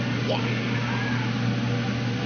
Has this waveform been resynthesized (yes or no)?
no